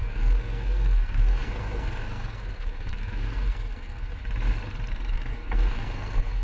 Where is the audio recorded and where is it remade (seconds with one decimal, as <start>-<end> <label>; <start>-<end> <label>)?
0.0-4.2 remade; 4.2-4.9 recorded; 4.9-6.4 remade